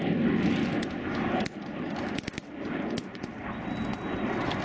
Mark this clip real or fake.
real